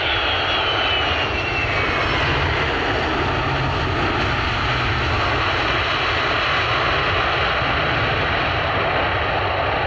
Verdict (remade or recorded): recorded